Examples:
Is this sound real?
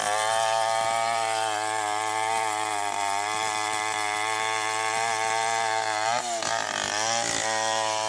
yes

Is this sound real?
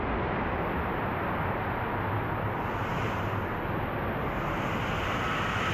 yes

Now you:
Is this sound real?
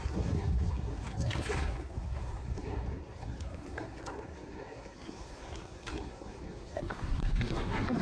no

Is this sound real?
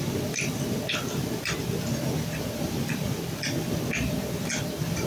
yes